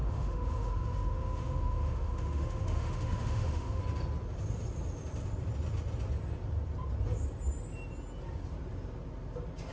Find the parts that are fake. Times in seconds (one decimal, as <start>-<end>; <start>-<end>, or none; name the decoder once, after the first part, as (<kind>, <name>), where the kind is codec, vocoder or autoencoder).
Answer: 0.0-3.8 (autoencoder, DAC-VAE)

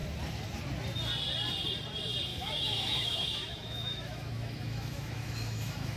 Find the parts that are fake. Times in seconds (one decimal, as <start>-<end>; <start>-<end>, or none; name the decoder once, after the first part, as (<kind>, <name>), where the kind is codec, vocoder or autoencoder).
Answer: 2.3-6.0 (autoencoder, DAC-VAE)